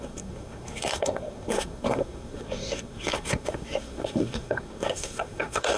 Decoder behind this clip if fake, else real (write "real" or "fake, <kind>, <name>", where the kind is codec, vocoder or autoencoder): fake, codec, SNAC